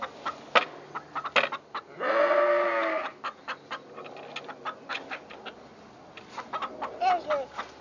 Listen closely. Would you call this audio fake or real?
real